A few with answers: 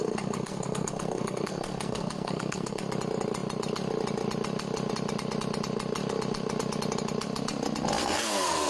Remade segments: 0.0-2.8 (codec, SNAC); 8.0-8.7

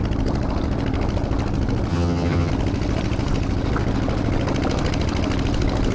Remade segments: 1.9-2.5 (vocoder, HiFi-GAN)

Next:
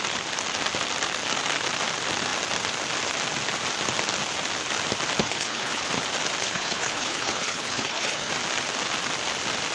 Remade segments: 5.2-5.9 (codec, HILCodec); 6.4-8.3

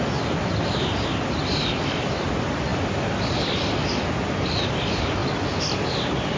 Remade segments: none

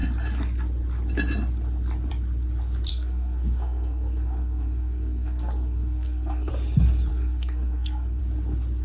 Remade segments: 2.9-6.5 (codec, SNAC); 7.1-8.2

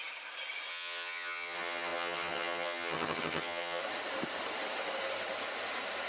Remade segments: 0.7-3.8 (vocoder, HiFi-GAN)

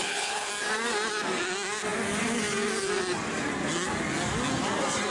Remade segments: 0.0-0.5 (codec, HILCodec)

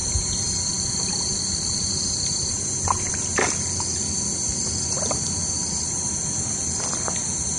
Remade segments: 0.0-3.1 (vocoder, BigVGAN v2)